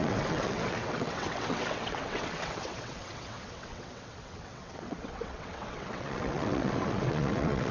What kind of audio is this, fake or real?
fake